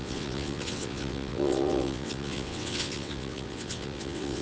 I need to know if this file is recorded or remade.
remade